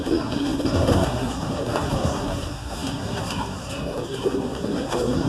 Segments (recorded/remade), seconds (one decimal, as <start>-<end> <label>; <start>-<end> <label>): 0.0-5.3 remade

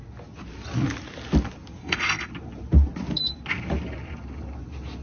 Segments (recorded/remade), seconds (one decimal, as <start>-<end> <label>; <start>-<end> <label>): 0.0-1.8 recorded; 1.8-2.3 remade; 2.3-5.0 recorded

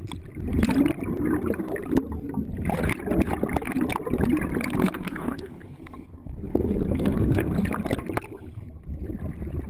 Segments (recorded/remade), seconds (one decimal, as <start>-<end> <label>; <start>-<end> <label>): 0.0-4.8 recorded; 4.8-7.5 remade; 7.5-9.7 recorded

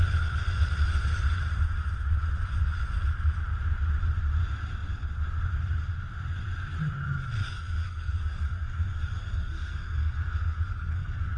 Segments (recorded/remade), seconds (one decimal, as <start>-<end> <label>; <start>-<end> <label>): 0.0-7.4 recorded; 7.4-11.4 remade